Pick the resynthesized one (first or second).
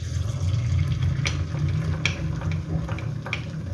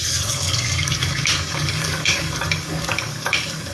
second